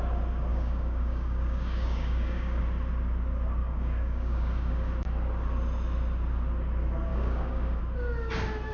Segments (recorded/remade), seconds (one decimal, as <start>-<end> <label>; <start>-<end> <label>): 0.0-0.5 recorded; 0.5-2.6 remade; 2.6-3.6 recorded; 3.6-4.9 remade; 4.9-7.1 recorded; 7.1-7.8 remade; 7.8-8.7 recorded